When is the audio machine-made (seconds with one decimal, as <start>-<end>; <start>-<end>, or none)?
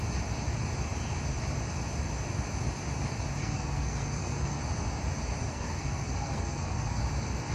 3.4-4.6; 5.4-7.0